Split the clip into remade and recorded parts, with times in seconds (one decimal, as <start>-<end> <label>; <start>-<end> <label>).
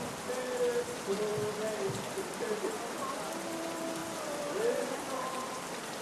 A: 0.0-6.0 recorded